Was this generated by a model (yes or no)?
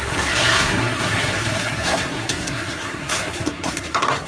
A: yes